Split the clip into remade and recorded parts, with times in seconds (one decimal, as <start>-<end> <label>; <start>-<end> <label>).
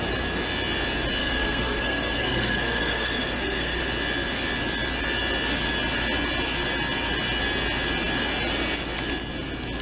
0.0-1.2 recorded; 1.2-3.8 remade; 3.8-9.8 recorded